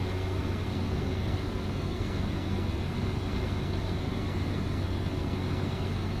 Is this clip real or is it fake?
fake